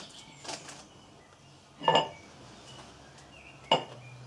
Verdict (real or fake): real